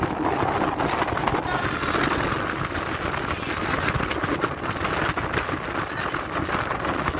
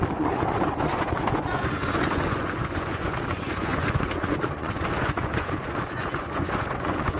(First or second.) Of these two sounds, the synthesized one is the second